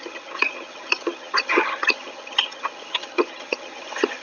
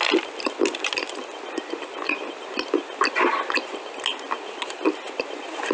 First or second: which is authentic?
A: second